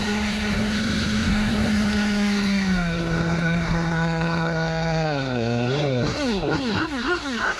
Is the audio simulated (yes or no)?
yes